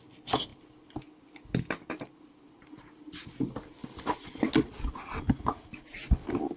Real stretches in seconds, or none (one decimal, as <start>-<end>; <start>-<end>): 0.0-6.6